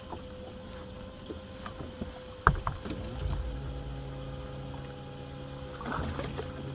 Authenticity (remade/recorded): recorded